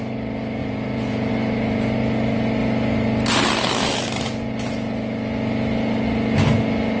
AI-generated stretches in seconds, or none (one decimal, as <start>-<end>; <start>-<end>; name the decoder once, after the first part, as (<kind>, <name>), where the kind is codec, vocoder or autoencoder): 0.6-1.3 (vocoder, Vocos)